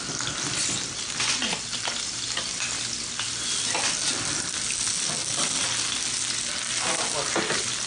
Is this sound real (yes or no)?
yes